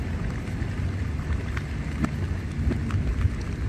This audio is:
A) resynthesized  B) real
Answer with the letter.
B